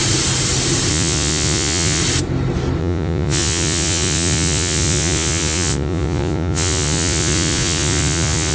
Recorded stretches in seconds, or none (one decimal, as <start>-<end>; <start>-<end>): 0.0-0.9; 2.0-2.8

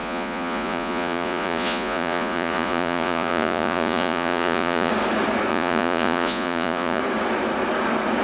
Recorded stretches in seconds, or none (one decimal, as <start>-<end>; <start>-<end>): 4.9-5.5; 7.0-8.2

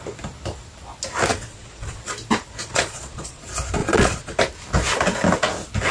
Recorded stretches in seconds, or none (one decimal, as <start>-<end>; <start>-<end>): 0.0-1.3; 2.0-2.6; 3.4-3.8; 4.4-5.9

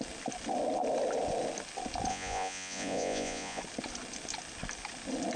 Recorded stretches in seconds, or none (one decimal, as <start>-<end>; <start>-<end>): 0.0-2.1; 3.6-5.4

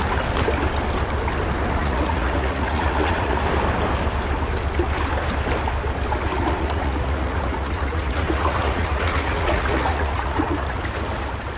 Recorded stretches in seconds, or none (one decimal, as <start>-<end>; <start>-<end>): 0.0-1.8; 3.4-6.3; 10.8-11.6

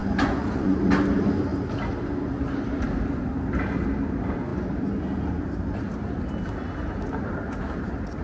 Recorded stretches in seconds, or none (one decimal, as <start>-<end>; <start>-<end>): 0.9-8.2